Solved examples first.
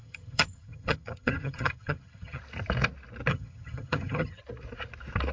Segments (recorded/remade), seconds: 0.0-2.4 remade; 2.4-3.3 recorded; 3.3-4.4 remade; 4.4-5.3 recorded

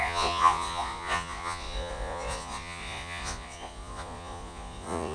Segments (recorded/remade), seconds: 0.0-5.1 remade

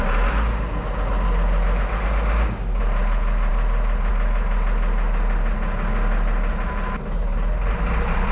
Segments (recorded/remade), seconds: 0.0-8.3 recorded

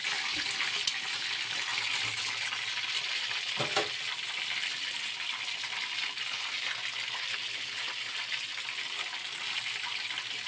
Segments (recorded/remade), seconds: 0.0-10.5 recorded

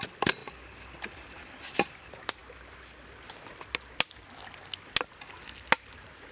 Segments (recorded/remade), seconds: 0.0-6.3 recorded

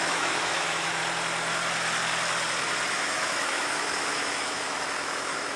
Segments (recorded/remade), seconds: 0.0-1.0 remade; 1.0-2.9 recorded; 2.9-5.6 remade

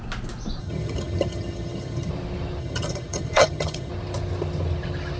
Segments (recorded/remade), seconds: 0.0-0.6 recorded; 0.6-2.1 remade; 2.1-2.6 recorded; 2.6-3.9 remade; 3.9-5.2 recorded